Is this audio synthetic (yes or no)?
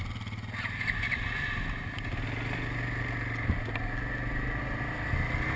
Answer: no